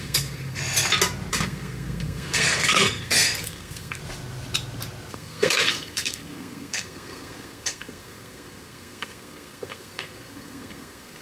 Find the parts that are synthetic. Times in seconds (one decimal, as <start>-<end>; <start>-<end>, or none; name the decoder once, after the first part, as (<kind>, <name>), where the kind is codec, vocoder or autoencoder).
0.0-0.6 (codec, SNAC); 1.3-4.0; 5.1-11.2